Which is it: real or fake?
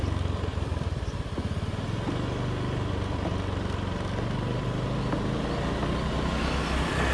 real